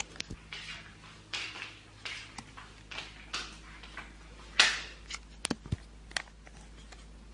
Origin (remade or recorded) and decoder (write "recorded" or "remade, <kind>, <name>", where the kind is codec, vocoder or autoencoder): recorded